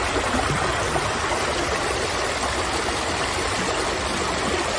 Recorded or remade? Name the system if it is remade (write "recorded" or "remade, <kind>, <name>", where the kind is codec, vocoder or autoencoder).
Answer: recorded